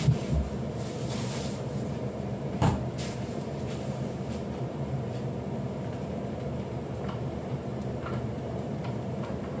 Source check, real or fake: fake